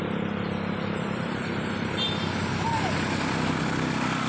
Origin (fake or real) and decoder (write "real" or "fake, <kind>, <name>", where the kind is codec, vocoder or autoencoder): real